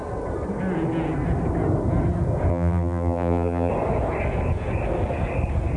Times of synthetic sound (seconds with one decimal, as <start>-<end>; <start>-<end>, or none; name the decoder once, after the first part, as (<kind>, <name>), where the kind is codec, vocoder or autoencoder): 2.5-3.7 (vocoder, BigVGAN v2)